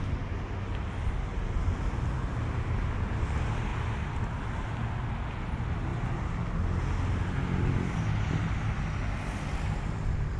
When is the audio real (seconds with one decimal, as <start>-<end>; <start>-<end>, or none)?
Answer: 0.0-10.4